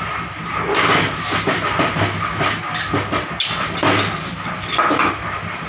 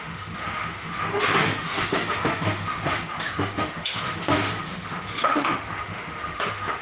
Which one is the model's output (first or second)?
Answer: second